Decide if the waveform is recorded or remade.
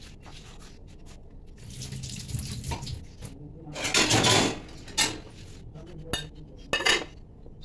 recorded